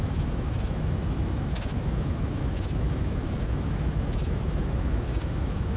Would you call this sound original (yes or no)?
no